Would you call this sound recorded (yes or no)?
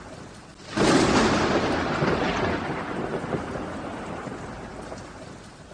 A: yes